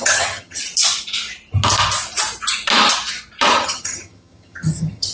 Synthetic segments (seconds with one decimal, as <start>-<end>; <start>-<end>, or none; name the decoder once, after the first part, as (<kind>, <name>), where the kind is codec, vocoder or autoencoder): 0.0-0.6 (vocoder, HiFi-GAN); 3.5-5.1